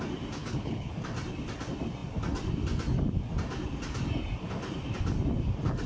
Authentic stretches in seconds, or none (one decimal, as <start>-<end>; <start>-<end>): 0.0-0.4; 0.9-5.9